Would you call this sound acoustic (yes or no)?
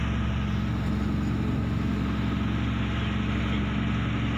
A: yes